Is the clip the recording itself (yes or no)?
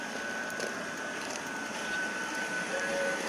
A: no